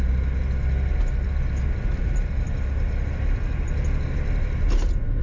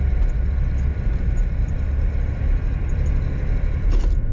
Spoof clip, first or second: second